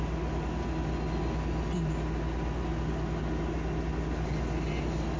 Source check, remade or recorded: recorded